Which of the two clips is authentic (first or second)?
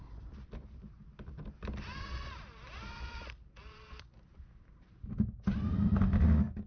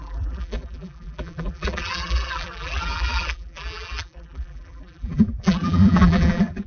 first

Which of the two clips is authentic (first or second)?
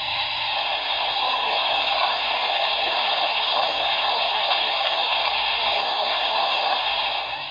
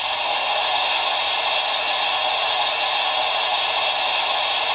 second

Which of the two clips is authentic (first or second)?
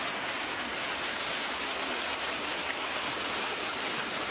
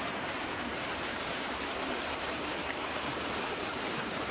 first